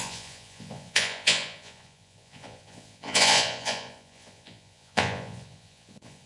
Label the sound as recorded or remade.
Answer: remade